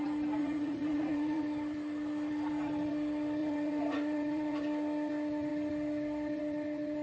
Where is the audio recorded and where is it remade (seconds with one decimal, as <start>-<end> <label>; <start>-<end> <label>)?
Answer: 0.0-0.4 recorded; 0.4-1.4 remade; 1.4-3.4 recorded; 3.4-4.6 remade; 4.6-7.0 recorded